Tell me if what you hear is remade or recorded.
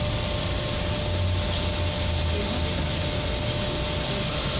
recorded